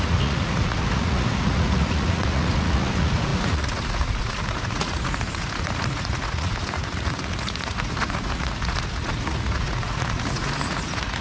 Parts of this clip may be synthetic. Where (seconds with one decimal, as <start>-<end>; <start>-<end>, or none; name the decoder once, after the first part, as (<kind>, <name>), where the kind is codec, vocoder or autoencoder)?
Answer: 0.0-11.2 (vocoder, Vocos)